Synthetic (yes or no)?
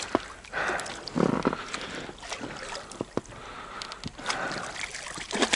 no